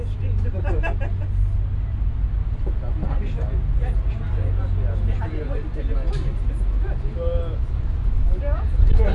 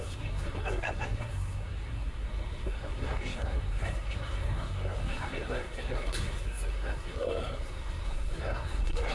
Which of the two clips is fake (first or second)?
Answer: second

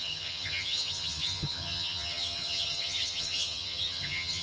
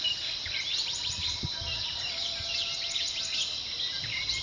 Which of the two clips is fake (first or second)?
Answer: first